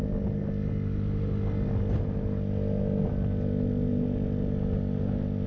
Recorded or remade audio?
recorded